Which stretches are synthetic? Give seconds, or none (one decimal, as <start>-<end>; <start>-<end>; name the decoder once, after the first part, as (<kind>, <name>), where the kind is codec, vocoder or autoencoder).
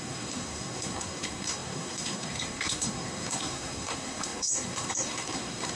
0.0-5.8 (codec, SNAC)